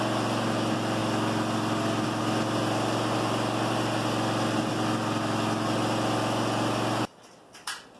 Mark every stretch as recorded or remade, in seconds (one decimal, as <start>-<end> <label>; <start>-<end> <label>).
0.0-8.0 recorded